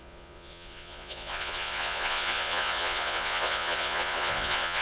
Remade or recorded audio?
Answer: remade